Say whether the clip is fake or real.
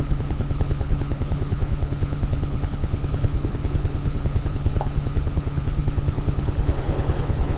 fake